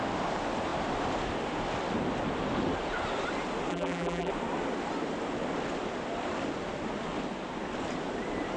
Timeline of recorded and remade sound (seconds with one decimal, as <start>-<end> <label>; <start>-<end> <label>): 0.0-3.7 recorded; 3.7-4.3 remade; 4.3-8.6 recorded